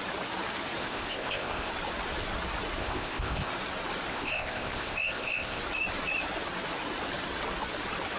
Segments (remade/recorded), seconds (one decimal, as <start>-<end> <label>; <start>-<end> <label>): 0.0-0.8 recorded; 0.8-1.7 remade; 1.7-2.8 recorded; 2.8-3.5 remade; 3.5-4.1 recorded; 4.1-5.6 remade; 5.6-8.2 recorded